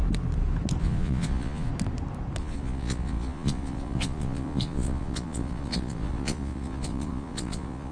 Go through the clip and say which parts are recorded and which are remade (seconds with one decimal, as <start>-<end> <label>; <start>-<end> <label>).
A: 0.0-0.8 recorded; 0.8-1.7 remade; 1.7-2.4 recorded; 2.4-7.9 remade